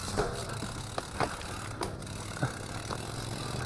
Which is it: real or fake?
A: real